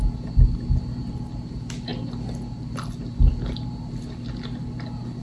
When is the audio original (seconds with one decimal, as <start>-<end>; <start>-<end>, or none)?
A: 0.0-5.2